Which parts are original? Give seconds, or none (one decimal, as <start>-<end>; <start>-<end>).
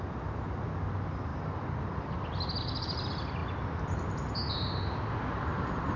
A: 0.0-6.0